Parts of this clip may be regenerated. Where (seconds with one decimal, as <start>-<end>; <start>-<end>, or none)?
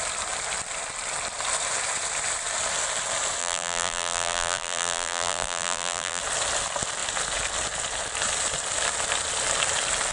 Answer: 3.4-6.2